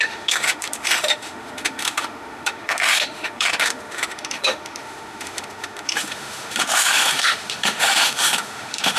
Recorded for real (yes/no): no